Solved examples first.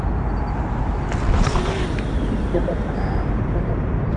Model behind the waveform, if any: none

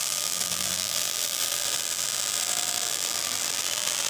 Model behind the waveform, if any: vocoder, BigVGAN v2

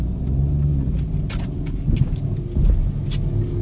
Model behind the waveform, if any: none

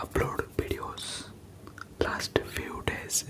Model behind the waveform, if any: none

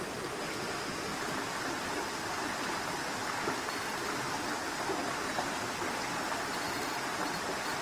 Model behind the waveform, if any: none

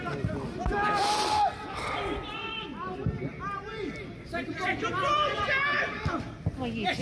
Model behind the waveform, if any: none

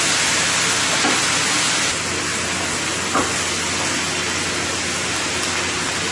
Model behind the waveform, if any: none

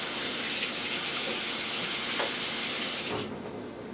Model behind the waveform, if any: none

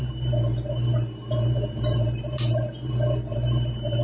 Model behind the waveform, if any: vocoder, BigVGAN v2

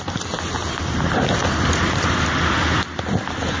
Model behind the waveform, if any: none